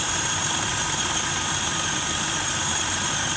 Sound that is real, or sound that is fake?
fake